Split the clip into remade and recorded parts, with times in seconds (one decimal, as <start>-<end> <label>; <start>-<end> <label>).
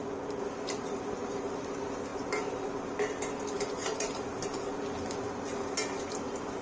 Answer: 0.0-6.6 recorded